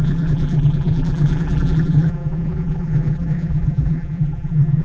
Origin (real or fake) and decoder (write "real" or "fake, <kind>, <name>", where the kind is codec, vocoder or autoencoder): fake, vocoder, BigVGAN v2